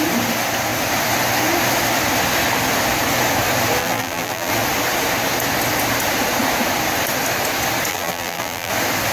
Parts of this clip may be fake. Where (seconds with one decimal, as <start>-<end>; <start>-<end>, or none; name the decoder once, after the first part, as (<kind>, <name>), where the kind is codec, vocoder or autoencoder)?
3.8-4.5 (vocoder, BigVGAN v2); 7.9-8.7